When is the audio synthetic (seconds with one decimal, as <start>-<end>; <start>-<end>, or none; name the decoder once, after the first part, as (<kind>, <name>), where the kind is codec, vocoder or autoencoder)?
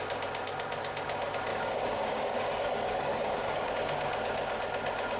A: 1.5-3.7 (codec, DAC)